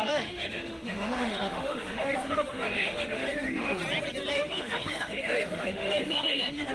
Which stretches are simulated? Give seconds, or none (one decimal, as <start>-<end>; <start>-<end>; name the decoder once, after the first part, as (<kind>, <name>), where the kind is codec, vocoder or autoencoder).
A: 0.0-3.8 (autoencoder, DAC-VAE); 4.3-6.7